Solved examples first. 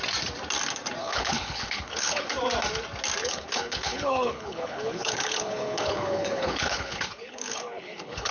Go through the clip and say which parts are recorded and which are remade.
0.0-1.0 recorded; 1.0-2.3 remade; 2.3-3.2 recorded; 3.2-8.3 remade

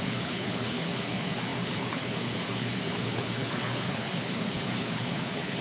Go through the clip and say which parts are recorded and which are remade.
0.0-5.6 remade

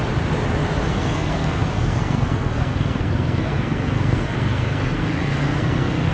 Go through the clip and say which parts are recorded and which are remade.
0.0-0.9 recorded; 0.9-6.1 remade

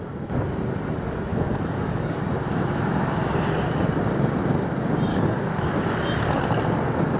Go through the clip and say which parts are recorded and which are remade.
0.0-1.3 recorded; 1.3-2.2 remade; 2.2-5.1 recorded; 5.1-5.7 remade; 5.7-7.2 recorded